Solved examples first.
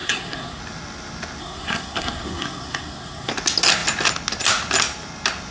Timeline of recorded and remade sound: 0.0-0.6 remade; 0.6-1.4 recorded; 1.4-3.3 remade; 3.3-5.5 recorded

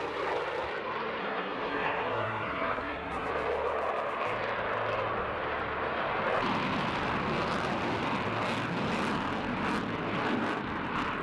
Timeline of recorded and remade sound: 0.0-1.2 recorded; 1.2-3.3 remade; 3.3-11.2 recorded

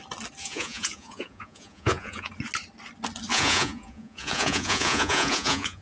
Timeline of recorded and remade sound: 0.0-0.4 recorded; 0.4-2.3 remade; 2.3-3.3 recorded; 3.3-5.8 remade

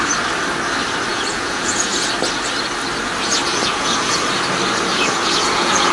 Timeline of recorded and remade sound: 0.0-1.1 recorded; 1.1-2.1 remade; 2.1-3.5 recorded; 3.5-4.1 remade; 4.1-4.9 recorded; 4.9-5.9 remade

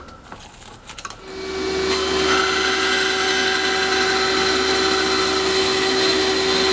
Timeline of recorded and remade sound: 0.0-5.6 recorded; 5.6-6.3 remade; 6.3-6.7 recorded

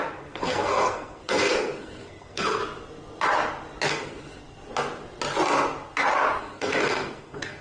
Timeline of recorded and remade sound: 0.0-2.6 remade; 2.6-3.9 recorded; 3.9-4.3 remade; 4.3-6.4 recorded; 6.4-7.6 remade

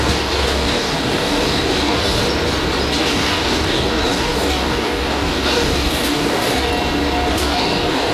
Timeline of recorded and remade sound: 0.0-2.2 remade; 2.2-3.0 recorded; 3.0-6.7 remade; 6.7-7.3 recorded; 7.3-8.1 remade